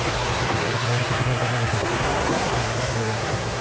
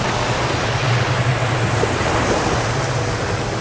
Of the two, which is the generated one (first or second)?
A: first